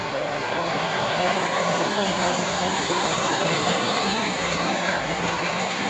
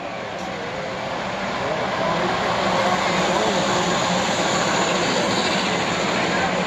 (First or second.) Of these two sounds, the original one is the second